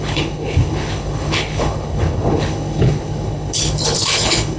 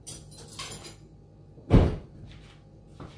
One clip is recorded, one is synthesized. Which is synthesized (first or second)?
first